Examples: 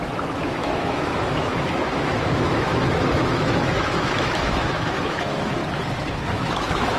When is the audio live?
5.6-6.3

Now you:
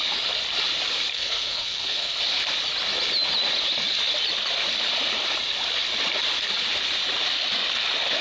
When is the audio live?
0.0-1.1; 2.2-8.2

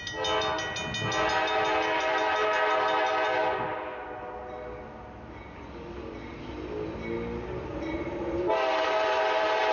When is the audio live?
0.0-7.7

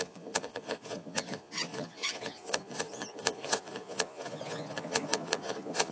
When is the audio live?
none